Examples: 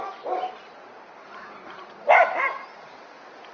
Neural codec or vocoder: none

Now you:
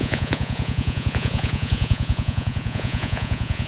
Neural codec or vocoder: vocoder, Vocos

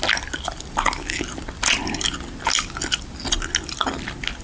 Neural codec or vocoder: none